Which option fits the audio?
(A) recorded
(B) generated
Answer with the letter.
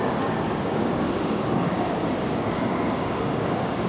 B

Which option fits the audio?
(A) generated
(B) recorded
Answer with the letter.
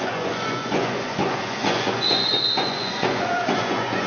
A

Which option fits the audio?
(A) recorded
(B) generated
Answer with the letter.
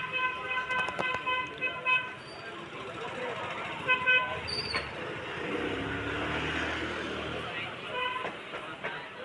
A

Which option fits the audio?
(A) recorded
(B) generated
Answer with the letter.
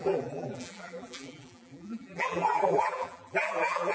B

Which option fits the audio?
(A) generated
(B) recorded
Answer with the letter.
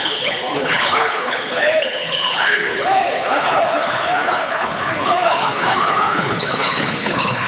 A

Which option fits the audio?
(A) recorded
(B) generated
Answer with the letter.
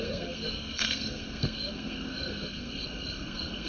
B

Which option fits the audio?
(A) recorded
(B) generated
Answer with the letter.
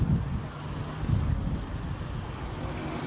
A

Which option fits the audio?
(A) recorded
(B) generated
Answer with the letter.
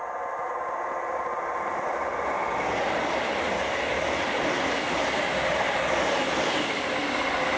A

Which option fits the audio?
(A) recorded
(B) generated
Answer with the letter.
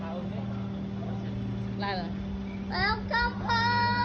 A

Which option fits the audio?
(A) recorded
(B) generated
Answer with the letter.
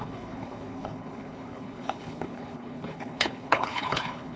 B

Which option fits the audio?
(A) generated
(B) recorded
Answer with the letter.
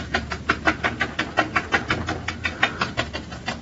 B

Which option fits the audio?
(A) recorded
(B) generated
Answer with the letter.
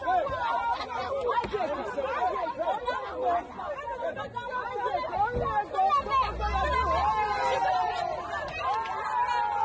A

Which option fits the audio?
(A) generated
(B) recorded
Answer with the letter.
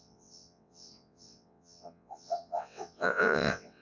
A